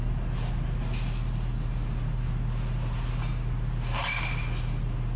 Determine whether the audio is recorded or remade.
recorded